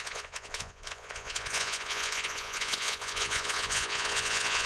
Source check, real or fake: fake